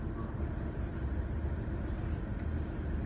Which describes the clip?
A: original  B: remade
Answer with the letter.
A